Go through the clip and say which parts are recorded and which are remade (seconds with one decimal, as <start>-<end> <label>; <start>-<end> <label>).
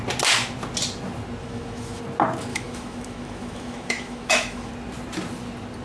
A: 0.0-1.4 recorded; 1.4-2.0 remade; 2.0-2.5 recorded; 2.5-4.7 remade; 4.7-5.8 recorded